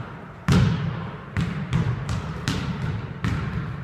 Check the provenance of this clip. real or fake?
real